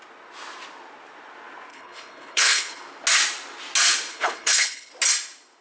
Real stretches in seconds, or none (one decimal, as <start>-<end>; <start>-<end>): 0.0-1.7; 2.8-4.1; 4.9-5.6